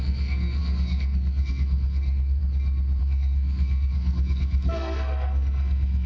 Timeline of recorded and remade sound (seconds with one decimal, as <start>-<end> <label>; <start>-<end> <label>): 0.0-2.4 remade; 2.4-3.0 recorded; 3.0-6.1 remade